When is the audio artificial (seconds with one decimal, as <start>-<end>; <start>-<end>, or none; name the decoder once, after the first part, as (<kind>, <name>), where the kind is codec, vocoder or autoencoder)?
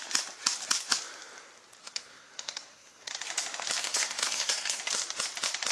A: 1.8-3.1 (codec, SNAC); 3.8-4.8